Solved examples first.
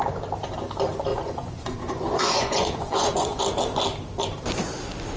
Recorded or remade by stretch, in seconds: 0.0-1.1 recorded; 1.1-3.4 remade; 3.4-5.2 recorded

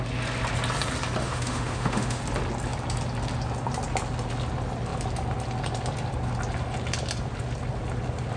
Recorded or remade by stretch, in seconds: 0.0-1.2 recorded; 1.2-2.2 remade; 2.2-8.4 recorded

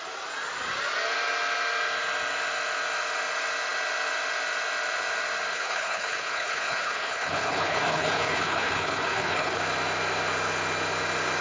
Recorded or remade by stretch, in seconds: 0.0-5.5 recorded; 5.5-9.6 remade; 9.6-11.4 recorded

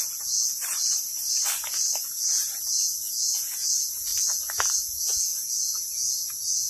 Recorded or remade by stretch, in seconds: 0.0-0.6 remade; 0.6-2.2 recorded; 2.2-6.7 remade

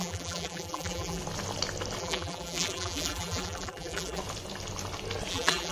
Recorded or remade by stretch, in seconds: 0.0-1.2 remade; 1.2-2.0 recorded; 2.0-4.2 remade; 4.2-5.3 recorded; 5.3-5.7 remade

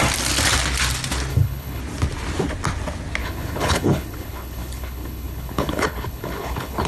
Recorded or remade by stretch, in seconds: 0.0-1.3 recorded; 1.3-1.8 remade; 1.8-3.2 recorded; 3.2-6.9 remade